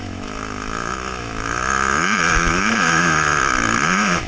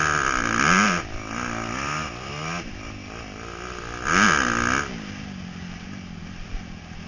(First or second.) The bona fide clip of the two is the second